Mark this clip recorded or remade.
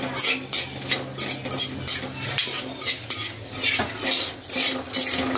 recorded